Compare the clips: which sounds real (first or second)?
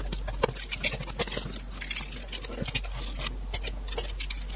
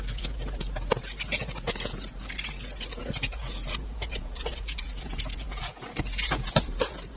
first